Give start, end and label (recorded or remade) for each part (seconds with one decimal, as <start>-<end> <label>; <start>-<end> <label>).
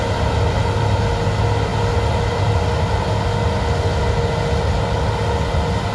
0.0-5.9 recorded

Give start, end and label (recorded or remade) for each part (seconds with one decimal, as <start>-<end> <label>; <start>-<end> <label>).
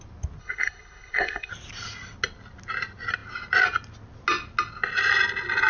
0.0-0.4 recorded; 0.4-1.5 remade; 1.5-5.7 recorded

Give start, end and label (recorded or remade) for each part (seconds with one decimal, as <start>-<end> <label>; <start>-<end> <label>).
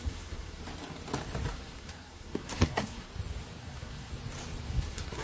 0.0-0.6 remade; 0.6-1.5 recorded; 1.5-3.1 remade; 3.1-3.6 recorded; 3.6-4.1 remade; 4.1-4.7 recorded; 4.7-5.2 remade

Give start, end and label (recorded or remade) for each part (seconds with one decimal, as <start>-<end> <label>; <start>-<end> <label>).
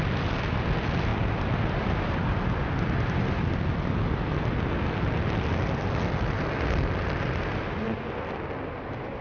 0.0-9.2 recorded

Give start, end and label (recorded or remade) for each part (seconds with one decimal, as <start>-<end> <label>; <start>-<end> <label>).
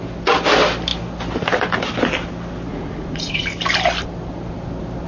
0.0-2.7 recorded; 2.7-3.4 remade; 3.4-5.1 recorded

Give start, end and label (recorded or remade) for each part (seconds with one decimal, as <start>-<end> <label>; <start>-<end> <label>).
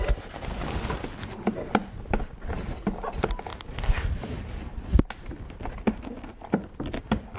0.0-7.4 recorded